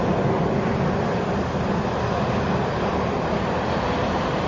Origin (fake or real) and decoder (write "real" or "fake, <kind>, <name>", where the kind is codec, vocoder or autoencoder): real